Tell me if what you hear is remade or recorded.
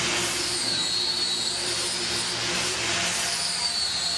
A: recorded